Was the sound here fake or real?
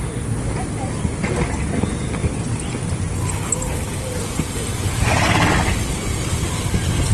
real